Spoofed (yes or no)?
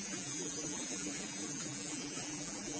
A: yes